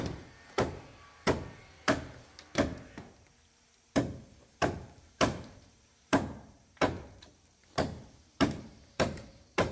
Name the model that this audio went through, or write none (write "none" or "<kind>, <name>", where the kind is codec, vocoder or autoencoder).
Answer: vocoder, BigVGAN v2